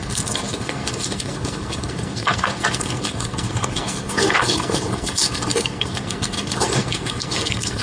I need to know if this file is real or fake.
fake